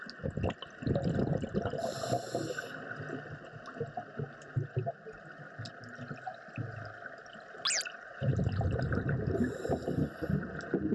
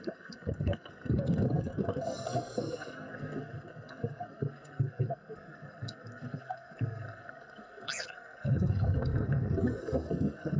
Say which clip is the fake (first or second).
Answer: second